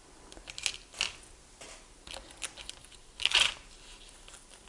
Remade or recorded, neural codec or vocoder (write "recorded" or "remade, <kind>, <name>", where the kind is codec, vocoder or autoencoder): recorded